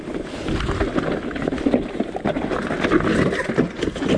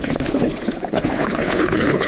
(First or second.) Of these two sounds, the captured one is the first